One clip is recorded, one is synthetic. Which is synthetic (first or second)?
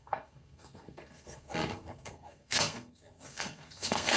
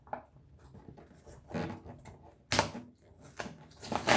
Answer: first